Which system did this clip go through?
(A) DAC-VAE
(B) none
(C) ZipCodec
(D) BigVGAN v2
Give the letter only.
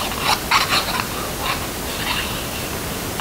B